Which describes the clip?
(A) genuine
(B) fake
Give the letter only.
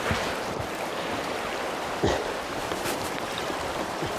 B